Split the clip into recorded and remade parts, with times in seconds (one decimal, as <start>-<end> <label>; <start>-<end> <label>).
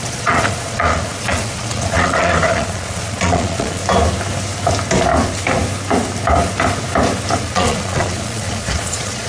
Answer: 0.0-3.8 remade; 3.8-7.4 recorded; 7.4-9.3 remade